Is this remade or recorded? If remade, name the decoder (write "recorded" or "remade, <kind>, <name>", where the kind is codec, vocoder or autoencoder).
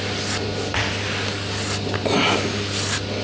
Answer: recorded